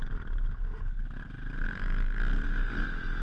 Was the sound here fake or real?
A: real